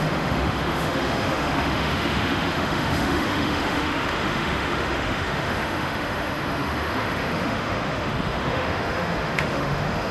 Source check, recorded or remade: remade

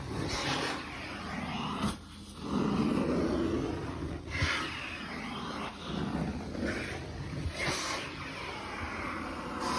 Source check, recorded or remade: recorded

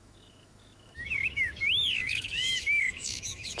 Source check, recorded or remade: remade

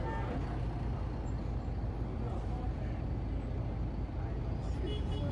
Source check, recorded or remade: recorded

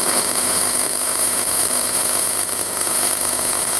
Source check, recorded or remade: remade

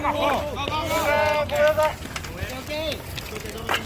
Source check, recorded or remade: recorded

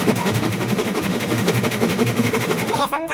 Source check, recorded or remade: remade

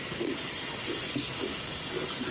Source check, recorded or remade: recorded